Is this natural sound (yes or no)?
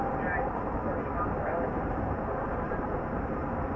no